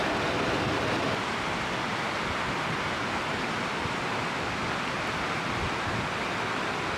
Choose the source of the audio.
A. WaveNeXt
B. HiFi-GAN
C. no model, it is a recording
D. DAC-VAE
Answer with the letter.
C